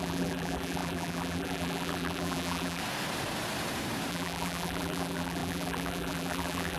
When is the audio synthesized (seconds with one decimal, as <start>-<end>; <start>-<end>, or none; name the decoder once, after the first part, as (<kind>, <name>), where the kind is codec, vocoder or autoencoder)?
0.0-2.8 (vocoder, BigVGAN v2); 4.1-6.8